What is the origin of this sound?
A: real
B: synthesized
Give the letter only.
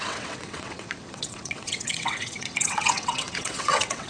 B